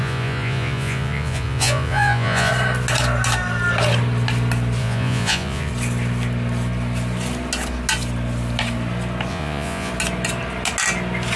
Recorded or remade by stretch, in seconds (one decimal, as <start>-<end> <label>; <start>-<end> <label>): 0.0-2.5 remade; 2.5-4.8 recorded; 4.8-5.7 remade; 5.7-9.3 recorded; 9.3-9.9 remade; 9.9-11.4 recorded